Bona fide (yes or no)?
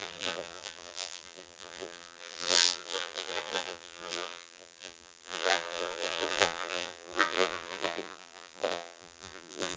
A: no